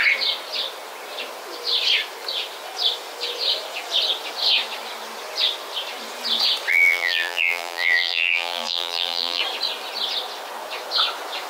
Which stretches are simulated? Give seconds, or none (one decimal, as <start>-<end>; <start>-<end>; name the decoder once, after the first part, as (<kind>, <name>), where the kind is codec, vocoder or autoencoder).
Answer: 6.7-9.4 (vocoder, BigVGAN v2)